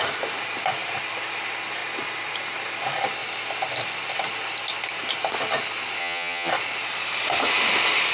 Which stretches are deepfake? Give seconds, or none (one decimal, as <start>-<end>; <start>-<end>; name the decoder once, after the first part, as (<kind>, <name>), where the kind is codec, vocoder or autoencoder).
6.0-6.5 (vocoder, HiFi-GAN)